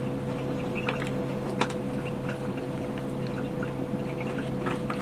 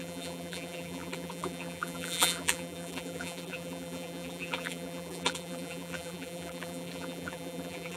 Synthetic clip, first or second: second